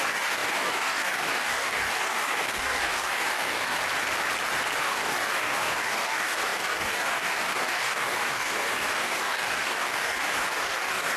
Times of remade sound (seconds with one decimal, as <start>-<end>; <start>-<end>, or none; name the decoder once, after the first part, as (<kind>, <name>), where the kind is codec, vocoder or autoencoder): 0.0-3.8 (codec, DAC); 4.8-11.2